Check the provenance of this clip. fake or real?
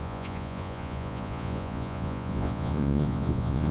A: fake